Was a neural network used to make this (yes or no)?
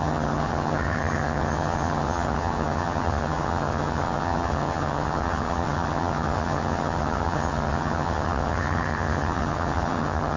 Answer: yes